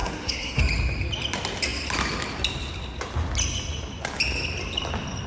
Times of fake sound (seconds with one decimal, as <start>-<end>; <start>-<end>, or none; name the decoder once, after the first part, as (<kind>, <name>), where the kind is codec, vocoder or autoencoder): 0.0-0.6 (codec, SNAC)